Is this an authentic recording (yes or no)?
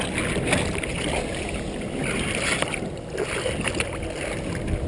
yes